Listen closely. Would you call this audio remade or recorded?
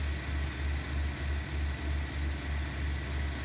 recorded